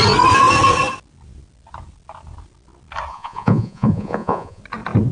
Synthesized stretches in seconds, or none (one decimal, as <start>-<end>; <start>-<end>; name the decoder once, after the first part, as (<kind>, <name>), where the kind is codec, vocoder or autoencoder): 3.1-4.6 (vocoder, Vocos)